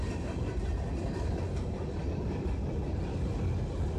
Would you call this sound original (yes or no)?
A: yes